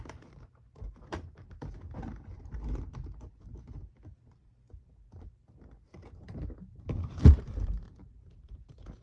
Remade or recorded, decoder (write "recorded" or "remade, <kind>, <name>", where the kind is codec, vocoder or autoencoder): remade, vocoder, BigVGAN v2